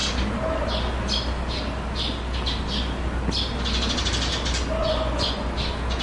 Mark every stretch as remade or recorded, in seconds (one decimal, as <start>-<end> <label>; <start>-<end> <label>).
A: 0.0-4.8 recorded; 4.8-5.6 remade; 5.6-6.0 recorded